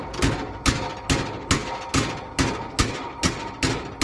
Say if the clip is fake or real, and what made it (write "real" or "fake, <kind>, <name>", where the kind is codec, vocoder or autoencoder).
real